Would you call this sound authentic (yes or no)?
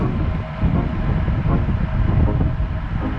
yes